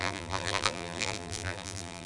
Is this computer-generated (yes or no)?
yes